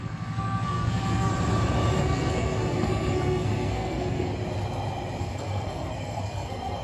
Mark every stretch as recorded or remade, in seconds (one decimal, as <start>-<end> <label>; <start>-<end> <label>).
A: 0.0-1.3 remade; 1.3-2.0 recorded; 2.0-4.3 remade; 4.3-5.2 recorded; 5.2-6.8 remade